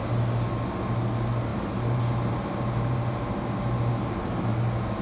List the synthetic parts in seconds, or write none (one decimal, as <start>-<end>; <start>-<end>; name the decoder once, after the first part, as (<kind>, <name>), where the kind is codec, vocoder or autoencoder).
1.5-4.5 (vocoder, BigVGAN v2)